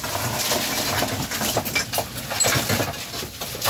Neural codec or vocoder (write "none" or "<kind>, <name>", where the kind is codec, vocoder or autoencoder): none